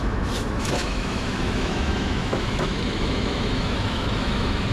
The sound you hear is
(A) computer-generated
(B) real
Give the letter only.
A